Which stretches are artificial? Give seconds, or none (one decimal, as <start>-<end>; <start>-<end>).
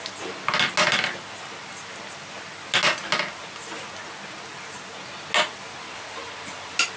none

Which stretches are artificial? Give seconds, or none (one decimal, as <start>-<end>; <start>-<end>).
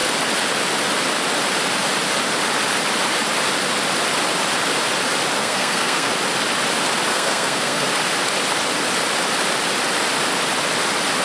5.4-6.1; 7.1-7.9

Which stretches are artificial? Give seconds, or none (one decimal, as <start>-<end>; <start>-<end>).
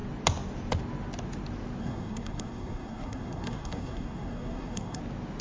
1.8-5.0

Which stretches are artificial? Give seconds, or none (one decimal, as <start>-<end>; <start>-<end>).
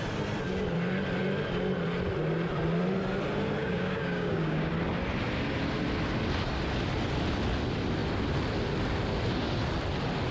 3.6-4.7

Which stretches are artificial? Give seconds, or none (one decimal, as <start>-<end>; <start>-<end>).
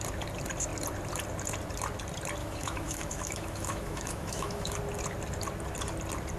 2.4-4.8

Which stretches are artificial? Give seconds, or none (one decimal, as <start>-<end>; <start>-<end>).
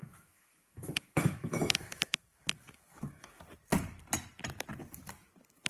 0.0-3.4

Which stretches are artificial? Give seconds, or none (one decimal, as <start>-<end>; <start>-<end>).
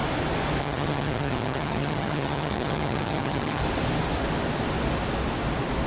0.6-3.6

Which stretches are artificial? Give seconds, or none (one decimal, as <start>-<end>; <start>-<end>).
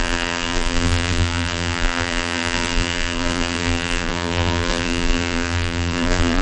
0.0-6.4